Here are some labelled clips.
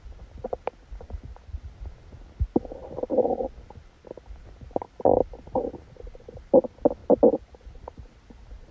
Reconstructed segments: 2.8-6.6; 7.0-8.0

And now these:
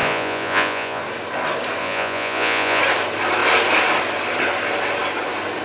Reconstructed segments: 0.0-1.0; 1.8-2.8

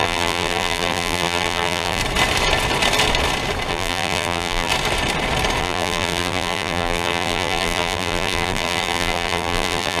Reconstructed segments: 0.0-2.0; 3.7-4.7; 5.6-10.0

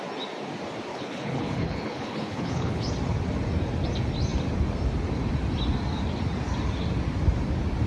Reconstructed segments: 0.9-2.9

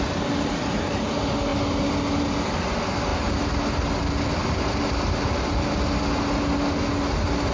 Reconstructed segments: none

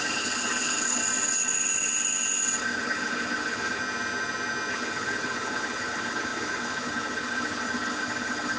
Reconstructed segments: 0.0-1.0; 2.6-3.8; 4.7-8.6

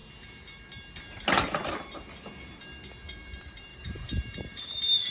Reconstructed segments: 3.7-5.1